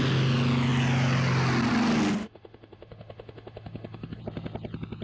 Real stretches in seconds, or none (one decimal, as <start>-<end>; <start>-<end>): 0.0-2.2; 4.2-5.0